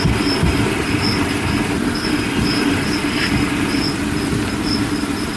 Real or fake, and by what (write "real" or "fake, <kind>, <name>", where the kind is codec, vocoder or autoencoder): real